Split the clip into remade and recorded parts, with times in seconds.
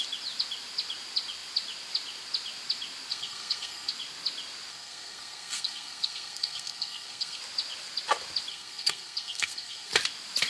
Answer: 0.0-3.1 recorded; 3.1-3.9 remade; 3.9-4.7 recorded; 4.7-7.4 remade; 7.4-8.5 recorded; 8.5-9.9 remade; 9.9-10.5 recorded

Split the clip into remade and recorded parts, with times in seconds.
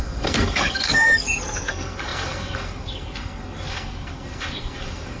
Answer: 0.0-5.2 remade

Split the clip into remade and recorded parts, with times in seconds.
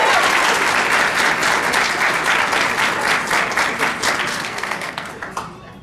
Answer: 0.0-4.3 recorded; 4.3-5.1 remade; 5.1-5.8 recorded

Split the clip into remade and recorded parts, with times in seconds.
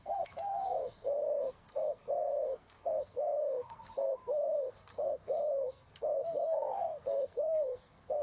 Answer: 0.0-8.2 remade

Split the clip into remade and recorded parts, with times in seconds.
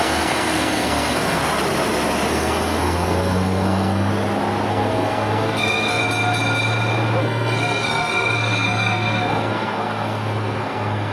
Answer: 0.0-1.4 remade; 1.4-2.3 recorded; 2.3-4.1 remade; 4.1-4.7 recorded; 4.7-6.0 remade; 6.0-7.2 recorded; 7.2-11.1 remade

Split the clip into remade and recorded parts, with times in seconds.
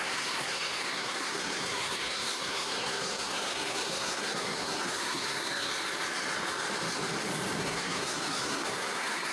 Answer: 0.0-5.7 remade; 5.7-7.6 recorded; 7.6-9.3 remade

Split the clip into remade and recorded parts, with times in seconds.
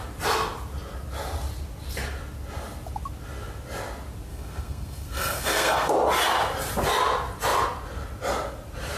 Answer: 0.0-4.3 recorded; 4.3-5.9 remade; 5.9-9.0 recorded